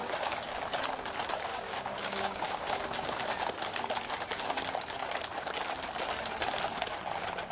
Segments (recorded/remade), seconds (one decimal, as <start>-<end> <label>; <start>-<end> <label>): 0.0-0.6 remade; 0.6-1.5 recorded; 1.5-2.8 remade; 2.8-7.5 recorded